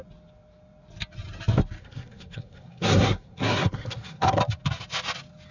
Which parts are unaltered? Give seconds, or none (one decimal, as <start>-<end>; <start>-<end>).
0.0-1.8; 4.4-5.5